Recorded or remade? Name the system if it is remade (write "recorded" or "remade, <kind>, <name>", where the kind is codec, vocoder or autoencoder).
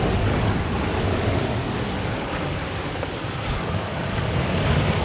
remade, codec, DAC